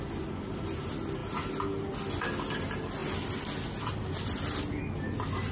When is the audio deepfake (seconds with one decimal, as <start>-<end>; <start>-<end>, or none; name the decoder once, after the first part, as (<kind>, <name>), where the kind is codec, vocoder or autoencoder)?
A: none

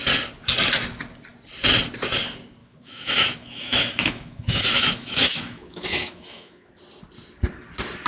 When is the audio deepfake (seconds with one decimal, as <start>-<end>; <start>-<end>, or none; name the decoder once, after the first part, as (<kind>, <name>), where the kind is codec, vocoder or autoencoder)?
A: 2.6-6.7 (autoencoder, DAC-VAE)